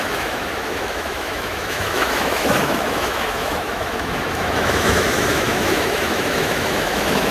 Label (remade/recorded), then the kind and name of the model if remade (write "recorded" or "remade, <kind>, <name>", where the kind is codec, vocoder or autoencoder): remade, autoencoder, DAC-VAE